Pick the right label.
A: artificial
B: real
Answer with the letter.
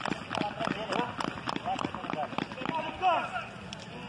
B